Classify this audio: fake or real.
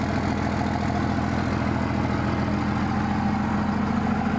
real